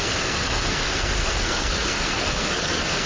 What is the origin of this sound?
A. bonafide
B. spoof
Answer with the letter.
B